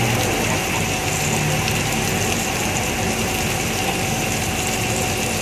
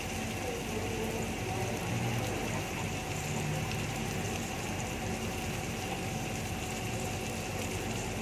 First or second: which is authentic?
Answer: first